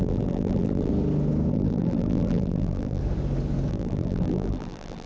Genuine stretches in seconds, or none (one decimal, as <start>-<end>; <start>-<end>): 0.9-1.5; 3.0-3.7